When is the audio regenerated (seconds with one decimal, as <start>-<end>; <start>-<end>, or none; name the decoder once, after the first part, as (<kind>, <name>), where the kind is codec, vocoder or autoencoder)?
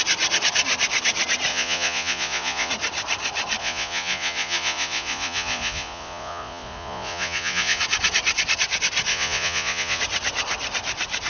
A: 1.5-2.7 (vocoder, Vocos); 3.6-7.8; 9.1-10.0